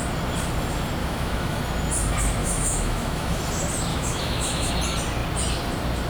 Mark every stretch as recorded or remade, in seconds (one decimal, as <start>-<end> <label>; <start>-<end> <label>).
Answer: 0.0-1.0 recorded; 1.0-1.6 remade; 1.6-2.4 recorded; 2.4-3.4 remade; 3.4-3.9 recorded; 3.9-4.7 remade; 4.7-6.1 recorded